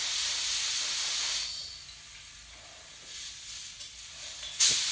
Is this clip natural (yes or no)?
yes